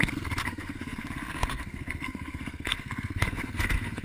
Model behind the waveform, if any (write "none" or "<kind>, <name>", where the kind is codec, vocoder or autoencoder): codec, SNAC